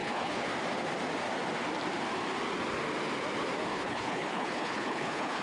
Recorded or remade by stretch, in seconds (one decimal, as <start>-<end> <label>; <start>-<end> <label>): 0.0-0.5 remade; 0.5-3.7 recorded; 3.7-5.4 remade